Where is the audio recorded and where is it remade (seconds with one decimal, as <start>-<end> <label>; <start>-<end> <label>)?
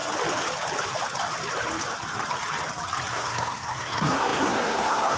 0.0-3.1 recorded; 3.1-5.2 remade